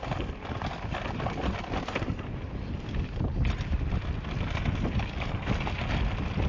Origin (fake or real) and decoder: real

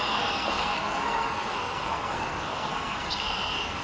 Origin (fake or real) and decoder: fake, codec, SNAC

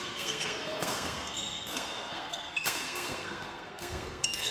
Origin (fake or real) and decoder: fake, codec, SNAC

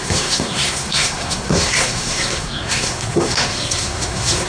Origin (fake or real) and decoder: fake, codec, SNAC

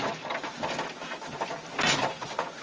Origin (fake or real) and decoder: real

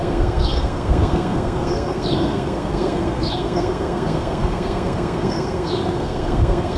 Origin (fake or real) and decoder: fake, codec, SNAC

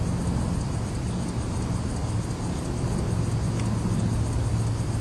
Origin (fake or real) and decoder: real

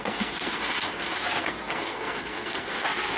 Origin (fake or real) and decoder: fake, codec, SNAC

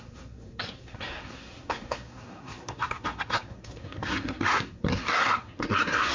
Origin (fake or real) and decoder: fake, codec, SNAC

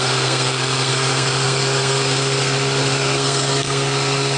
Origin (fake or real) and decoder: fake, codec, SNAC